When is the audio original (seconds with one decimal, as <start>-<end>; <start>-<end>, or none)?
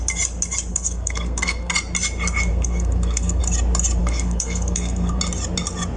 0.0-0.7; 1.7-2.5; 3.4-4.0; 5.2-6.0